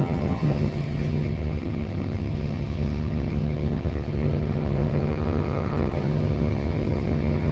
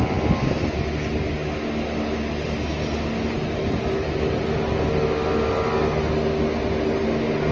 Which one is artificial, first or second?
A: first